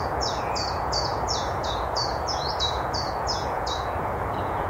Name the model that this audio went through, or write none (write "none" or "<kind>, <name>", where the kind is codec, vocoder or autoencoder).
vocoder, Vocos